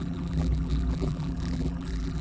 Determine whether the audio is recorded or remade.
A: remade